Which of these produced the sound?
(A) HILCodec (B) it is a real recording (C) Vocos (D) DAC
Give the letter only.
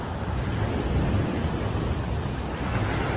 B